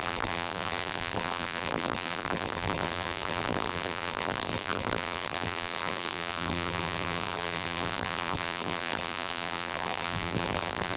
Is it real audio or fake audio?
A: fake